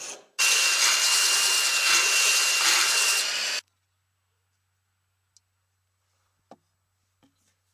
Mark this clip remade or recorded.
recorded